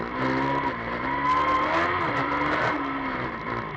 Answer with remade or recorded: recorded